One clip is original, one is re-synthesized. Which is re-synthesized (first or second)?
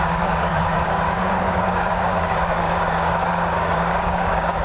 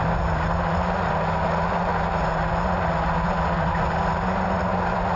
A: first